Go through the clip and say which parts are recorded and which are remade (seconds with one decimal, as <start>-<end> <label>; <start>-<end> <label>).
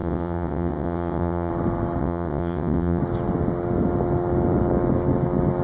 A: 0.0-1.5 remade; 1.5-2.0 recorded; 2.0-3.0 remade; 3.0-5.6 recorded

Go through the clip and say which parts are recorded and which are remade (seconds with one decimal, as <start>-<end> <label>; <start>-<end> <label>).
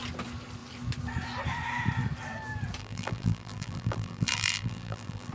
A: 0.0-2.8 recorded; 2.8-5.3 remade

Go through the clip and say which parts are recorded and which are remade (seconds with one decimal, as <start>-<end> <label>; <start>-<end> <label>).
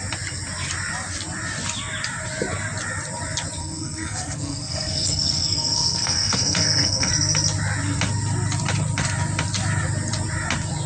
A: 0.0-3.6 recorded; 3.6-7.1 remade; 7.1-10.9 recorded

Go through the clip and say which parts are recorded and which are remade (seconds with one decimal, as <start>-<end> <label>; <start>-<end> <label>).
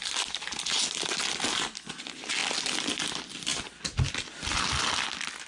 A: 0.0-5.5 recorded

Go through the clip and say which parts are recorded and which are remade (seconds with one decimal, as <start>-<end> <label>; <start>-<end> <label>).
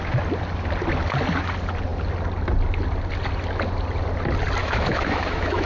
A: 0.0-4.6 recorded; 4.6-5.7 remade